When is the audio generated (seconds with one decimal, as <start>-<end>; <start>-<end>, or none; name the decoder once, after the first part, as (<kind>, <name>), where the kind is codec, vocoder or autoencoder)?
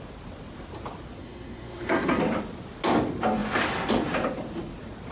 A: 1.2-2.2 (codec, SNAC)